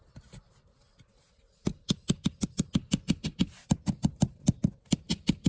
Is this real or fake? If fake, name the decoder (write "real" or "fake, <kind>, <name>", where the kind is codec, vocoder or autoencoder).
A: real